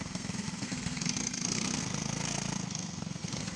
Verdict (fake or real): fake